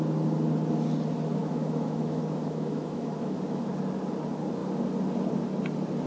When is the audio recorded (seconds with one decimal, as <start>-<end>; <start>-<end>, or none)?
0.0-1.4; 3.7-6.1